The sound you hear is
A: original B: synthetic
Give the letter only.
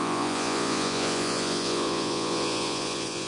B